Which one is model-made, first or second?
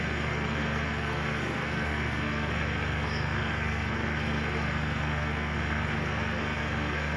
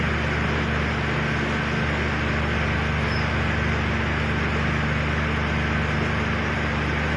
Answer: first